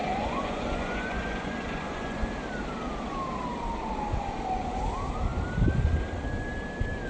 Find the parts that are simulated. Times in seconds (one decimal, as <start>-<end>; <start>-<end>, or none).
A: 0.0-2.3